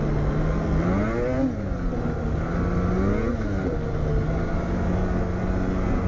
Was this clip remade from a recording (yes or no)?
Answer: no